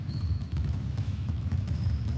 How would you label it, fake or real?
fake